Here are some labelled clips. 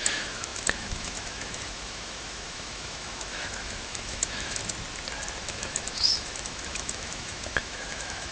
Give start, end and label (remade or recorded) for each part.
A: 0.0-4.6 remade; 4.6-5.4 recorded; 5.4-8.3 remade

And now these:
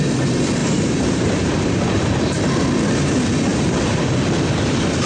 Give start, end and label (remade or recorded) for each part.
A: 0.0-0.6 recorded; 0.6-2.4 remade; 2.4-3.5 recorded; 3.5-4.1 remade; 4.1-5.1 recorded

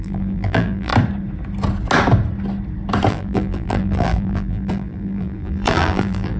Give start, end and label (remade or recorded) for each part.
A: 0.0-0.9 remade; 0.9-3.1 recorded; 3.1-6.4 remade